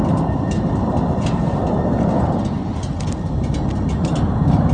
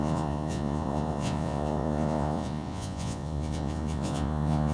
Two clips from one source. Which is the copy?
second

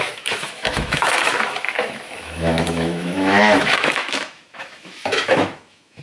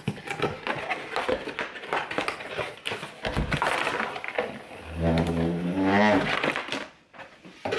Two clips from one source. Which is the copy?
first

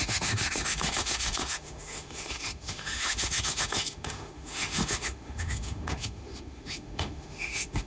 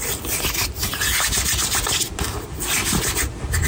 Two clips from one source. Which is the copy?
first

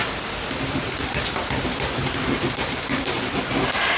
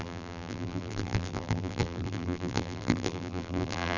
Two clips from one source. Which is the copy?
second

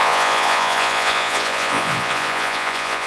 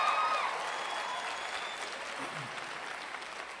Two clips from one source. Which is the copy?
first